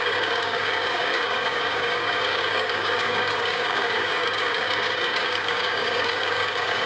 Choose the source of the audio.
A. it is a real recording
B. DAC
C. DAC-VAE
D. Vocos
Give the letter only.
B